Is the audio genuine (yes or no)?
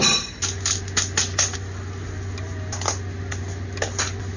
yes